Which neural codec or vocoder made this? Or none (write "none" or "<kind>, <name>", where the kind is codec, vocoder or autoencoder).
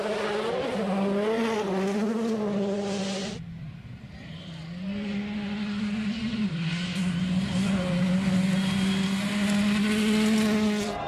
none